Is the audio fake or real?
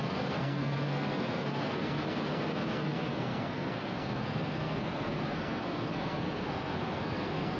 fake